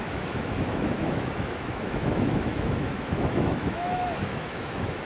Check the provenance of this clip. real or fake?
fake